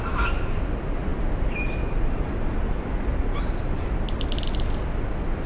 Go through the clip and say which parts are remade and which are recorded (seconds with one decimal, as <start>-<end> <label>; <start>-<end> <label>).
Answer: 0.0-5.5 recorded